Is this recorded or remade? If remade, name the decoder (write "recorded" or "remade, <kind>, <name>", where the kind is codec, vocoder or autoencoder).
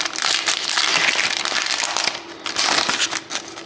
recorded